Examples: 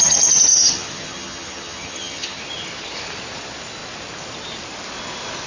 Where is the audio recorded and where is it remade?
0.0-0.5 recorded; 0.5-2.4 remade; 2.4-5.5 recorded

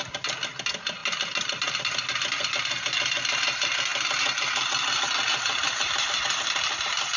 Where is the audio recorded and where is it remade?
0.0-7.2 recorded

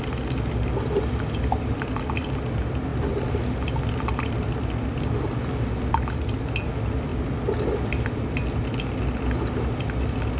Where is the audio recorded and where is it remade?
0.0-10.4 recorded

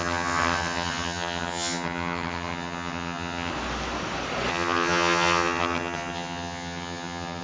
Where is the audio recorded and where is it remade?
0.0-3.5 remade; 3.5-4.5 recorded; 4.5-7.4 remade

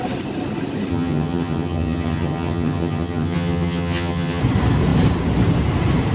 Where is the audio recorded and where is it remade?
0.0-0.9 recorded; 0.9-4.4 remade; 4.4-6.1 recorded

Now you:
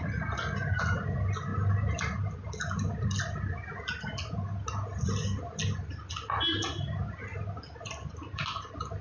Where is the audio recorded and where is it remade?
0.0-9.0 recorded

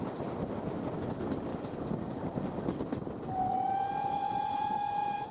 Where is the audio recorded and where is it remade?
0.0-5.3 recorded

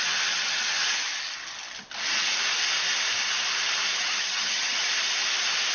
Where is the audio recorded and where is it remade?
0.0-4.0 recorded; 4.0-4.8 remade; 4.8-5.7 recorded